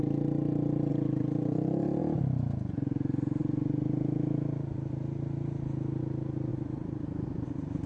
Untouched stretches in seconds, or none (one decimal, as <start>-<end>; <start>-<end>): 0.0-0.9; 2.0-6.5